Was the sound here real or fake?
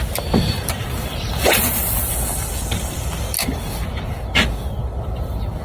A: real